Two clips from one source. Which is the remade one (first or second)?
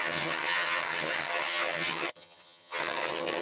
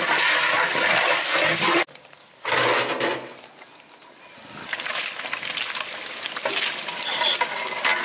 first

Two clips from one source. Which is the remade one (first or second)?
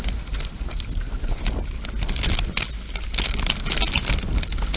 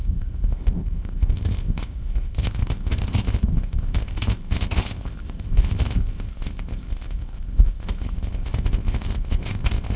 second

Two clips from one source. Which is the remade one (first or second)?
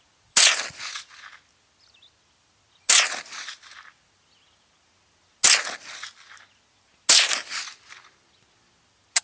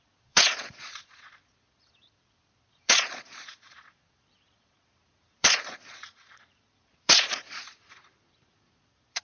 second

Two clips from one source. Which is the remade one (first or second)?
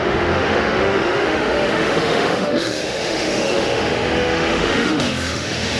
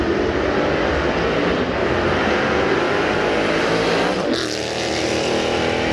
first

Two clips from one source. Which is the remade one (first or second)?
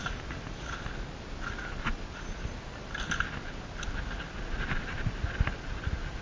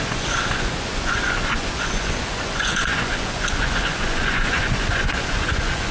second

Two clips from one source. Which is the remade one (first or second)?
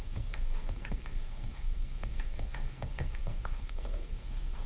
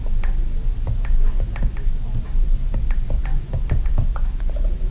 first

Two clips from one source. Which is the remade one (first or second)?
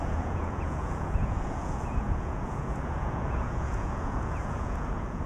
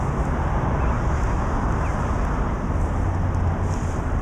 first